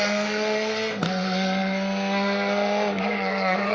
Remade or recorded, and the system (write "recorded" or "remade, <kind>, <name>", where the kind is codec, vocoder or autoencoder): remade, codec, SNAC